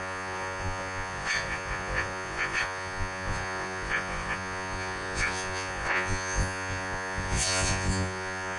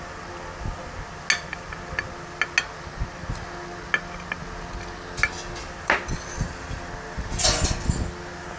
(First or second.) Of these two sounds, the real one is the second